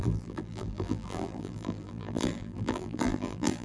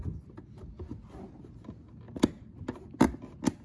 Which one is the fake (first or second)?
first